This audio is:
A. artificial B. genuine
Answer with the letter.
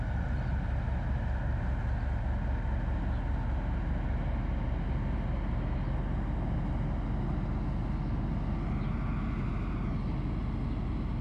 B